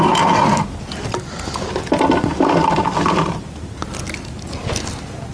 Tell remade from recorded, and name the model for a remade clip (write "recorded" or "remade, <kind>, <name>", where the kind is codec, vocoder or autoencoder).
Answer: recorded